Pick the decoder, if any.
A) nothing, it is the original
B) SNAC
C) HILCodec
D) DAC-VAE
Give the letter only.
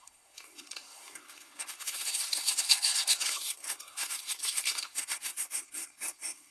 B